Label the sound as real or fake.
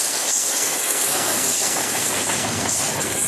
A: fake